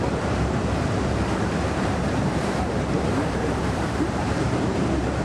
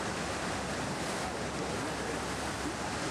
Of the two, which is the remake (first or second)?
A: first